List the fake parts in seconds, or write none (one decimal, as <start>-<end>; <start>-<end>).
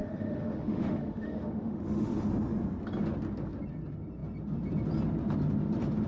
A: 0.0-2.3